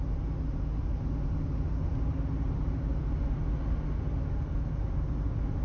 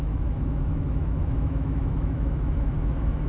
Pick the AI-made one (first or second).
second